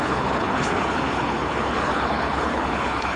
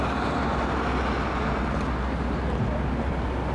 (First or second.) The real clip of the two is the second